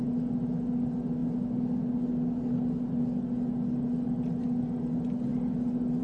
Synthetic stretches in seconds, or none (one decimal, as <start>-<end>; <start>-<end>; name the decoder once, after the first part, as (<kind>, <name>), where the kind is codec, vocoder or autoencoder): none